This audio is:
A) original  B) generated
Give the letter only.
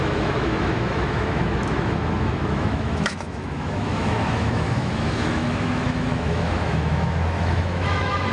B